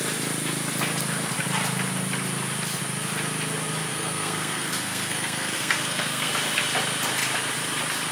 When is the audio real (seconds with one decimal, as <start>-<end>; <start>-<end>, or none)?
0.0-3.9; 6.3-8.1